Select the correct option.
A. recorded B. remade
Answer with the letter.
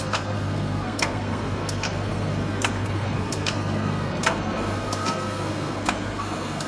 B